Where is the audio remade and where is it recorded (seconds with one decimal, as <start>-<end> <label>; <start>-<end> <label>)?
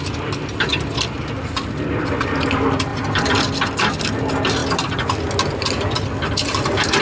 0.0-2.9 recorded; 2.9-3.4 remade; 3.4-7.0 recorded